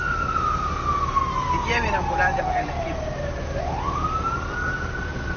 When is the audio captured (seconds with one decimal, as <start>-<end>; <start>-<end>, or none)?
0.8-2.5